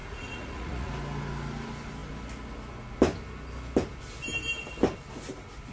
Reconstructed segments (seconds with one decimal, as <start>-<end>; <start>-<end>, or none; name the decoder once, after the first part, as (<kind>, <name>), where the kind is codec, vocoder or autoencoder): 0.0-0.9 (vocoder, Vocos)